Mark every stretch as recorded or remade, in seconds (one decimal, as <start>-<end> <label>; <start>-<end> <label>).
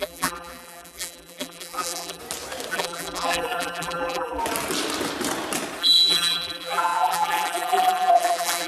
0.0-2.2 remade; 2.2-2.7 recorded; 2.7-4.4 remade; 4.4-5.8 recorded; 5.8-8.7 remade